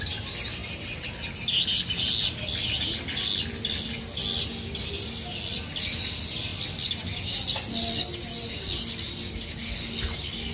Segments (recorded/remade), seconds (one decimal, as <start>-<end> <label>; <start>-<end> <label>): 0.0-10.5 recorded